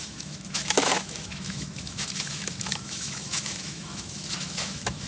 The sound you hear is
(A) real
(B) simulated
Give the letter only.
B